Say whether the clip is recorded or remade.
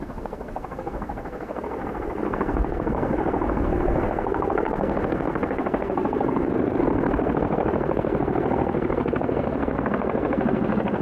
remade